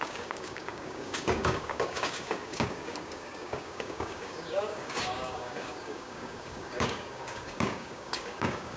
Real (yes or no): no